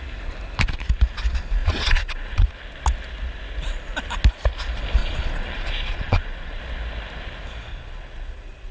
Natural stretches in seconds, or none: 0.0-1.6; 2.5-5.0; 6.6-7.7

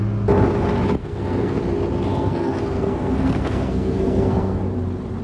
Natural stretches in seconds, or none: 0.0-1.0; 1.6-2.1; 4.6-5.2

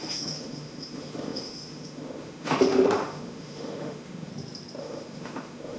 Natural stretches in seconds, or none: 4.3-4.8

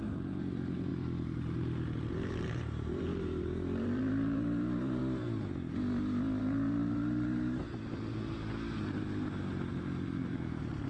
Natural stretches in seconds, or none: 0.9-2.1; 5.0-6.4; 7.6-9.7

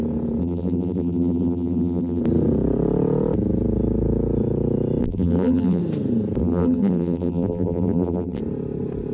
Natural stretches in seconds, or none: 0.0-0.4; 2.2-5.0; 5.8-6.4; 8.4-9.1

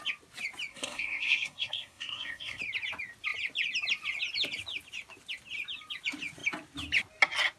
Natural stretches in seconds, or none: 0.0-0.7; 2.6-7.6

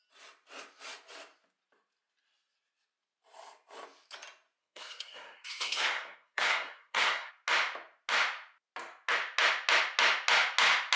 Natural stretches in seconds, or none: 0.0-4.6; 7.3-11.0